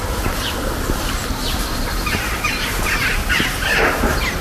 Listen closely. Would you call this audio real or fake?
real